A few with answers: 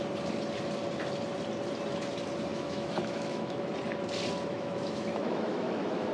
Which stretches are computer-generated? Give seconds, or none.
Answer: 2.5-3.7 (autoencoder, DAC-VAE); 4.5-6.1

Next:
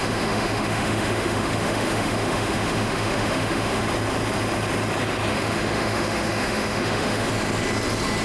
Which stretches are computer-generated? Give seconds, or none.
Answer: 0.0-3.8 (autoencoder, DAC-VAE); 5.3-7.3